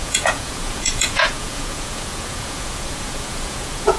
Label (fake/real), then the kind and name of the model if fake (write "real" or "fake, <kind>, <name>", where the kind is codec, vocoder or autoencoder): fake, vocoder, Vocos